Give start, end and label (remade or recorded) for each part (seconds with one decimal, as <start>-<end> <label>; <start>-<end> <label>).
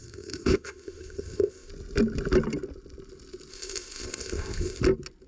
0.0-1.7 remade; 1.7-3.5 recorded; 3.5-4.8 remade; 4.8-5.3 recorded